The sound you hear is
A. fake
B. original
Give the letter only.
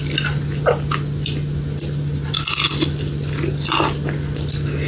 B